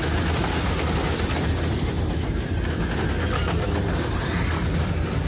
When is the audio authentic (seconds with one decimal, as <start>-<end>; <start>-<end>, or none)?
0.0-5.3

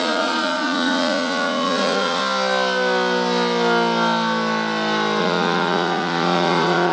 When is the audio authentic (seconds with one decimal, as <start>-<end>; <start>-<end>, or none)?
2.2-5.2

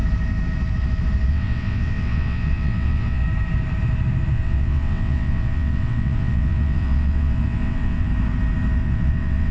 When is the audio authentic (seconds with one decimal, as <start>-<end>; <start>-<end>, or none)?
0.0-1.3; 3.2-4.3; 8.1-8.8